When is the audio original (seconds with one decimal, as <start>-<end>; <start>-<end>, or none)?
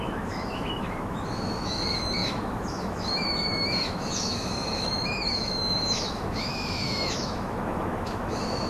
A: none